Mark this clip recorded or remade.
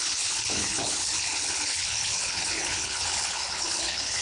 remade